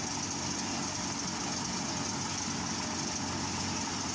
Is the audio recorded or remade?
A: recorded